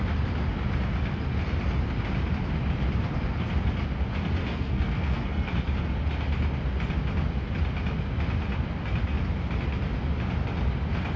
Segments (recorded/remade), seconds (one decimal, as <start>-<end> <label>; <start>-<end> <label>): 0.0-4.5 recorded; 4.5-5.5 remade; 5.5-11.2 recorded